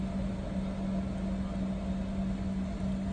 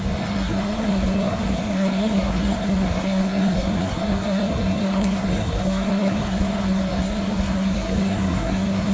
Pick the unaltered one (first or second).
first